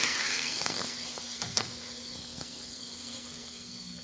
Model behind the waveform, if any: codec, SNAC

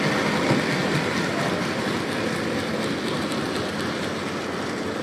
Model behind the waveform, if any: none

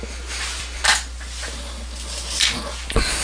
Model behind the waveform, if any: none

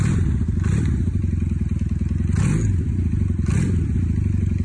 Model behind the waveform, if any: none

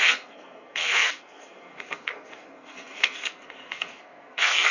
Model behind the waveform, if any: codec, SNAC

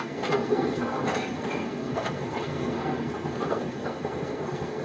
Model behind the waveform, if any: codec, SNAC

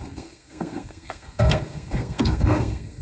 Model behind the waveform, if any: codec, SNAC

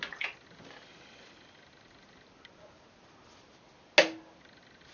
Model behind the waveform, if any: none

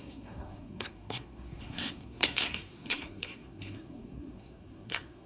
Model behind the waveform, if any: codec, SNAC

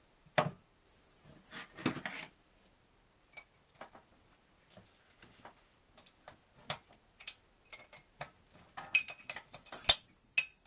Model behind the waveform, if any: none